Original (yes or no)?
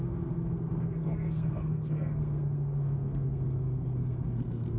no